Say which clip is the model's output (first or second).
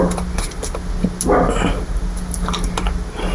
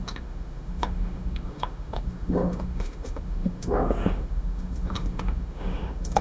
second